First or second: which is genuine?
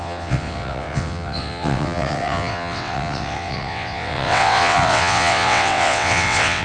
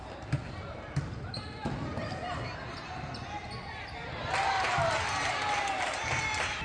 second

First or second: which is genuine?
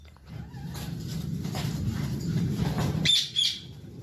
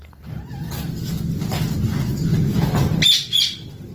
second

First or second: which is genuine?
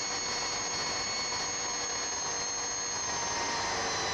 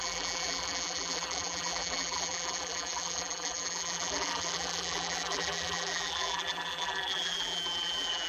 first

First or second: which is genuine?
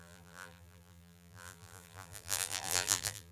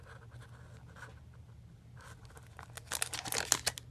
second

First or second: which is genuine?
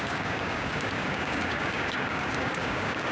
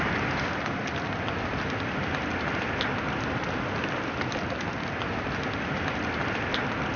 second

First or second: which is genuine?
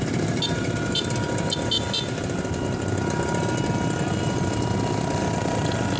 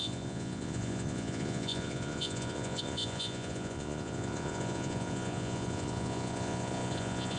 first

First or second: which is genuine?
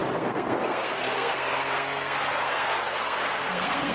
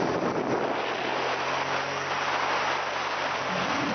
second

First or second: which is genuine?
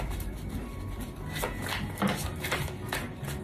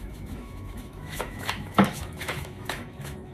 first